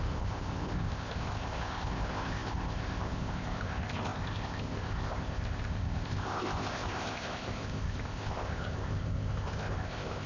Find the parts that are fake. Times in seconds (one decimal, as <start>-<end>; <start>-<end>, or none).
0.0-10.3